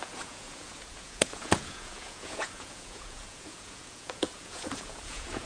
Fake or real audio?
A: fake